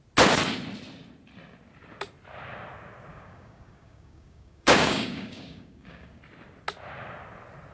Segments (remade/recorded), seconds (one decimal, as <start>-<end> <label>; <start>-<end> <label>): 0.0-3.1 recorded; 3.1-6.2 remade; 6.2-7.7 recorded

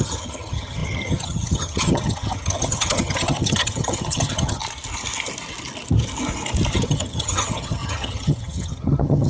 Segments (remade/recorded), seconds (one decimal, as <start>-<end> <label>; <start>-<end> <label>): 0.0-4.6 remade; 4.6-6.7 recorded; 6.7-9.3 remade